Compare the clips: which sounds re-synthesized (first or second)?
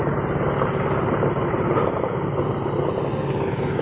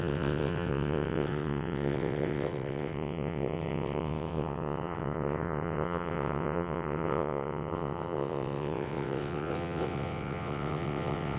second